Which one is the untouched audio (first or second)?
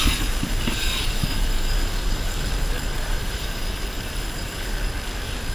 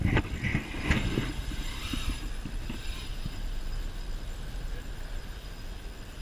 second